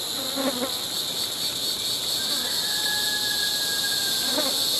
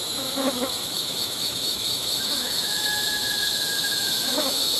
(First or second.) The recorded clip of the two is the first